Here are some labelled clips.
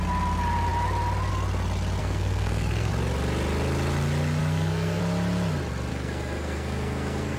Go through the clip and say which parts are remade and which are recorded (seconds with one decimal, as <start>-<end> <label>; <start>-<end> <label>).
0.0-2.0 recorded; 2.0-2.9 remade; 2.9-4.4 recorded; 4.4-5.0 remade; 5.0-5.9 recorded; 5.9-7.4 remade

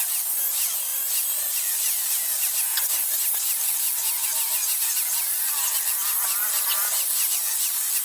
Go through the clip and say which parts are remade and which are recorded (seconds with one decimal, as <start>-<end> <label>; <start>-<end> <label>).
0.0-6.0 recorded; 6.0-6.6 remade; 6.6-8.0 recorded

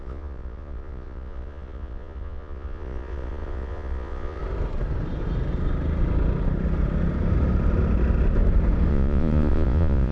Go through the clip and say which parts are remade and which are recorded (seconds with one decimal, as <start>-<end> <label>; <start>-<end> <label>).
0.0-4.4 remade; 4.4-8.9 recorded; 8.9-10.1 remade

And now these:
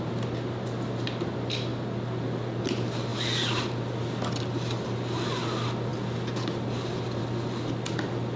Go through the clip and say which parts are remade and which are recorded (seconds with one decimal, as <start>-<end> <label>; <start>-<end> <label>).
0.0-8.4 recorded